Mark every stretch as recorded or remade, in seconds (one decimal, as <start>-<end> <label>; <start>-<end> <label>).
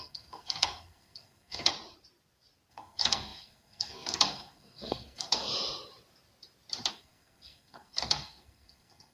0.0-1.7 remade; 1.7-2.7 recorded; 2.7-5.5 remade; 5.5-6.9 recorded; 6.9-9.1 remade